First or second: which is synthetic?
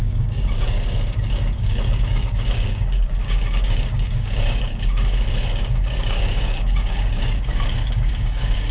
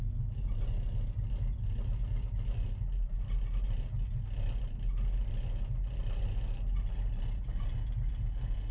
first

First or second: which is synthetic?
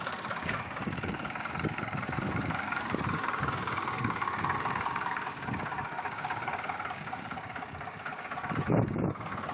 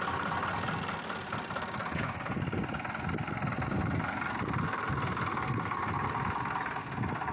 first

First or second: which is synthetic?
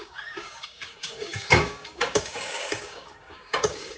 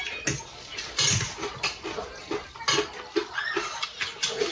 first